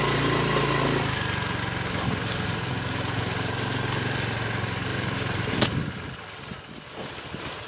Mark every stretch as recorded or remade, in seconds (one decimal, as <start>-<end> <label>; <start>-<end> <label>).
0.0-7.7 recorded